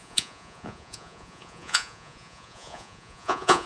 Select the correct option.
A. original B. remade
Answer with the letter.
B